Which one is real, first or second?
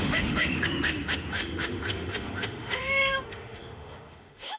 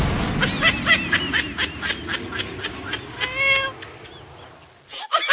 second